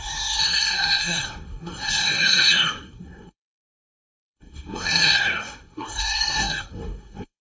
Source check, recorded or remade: remade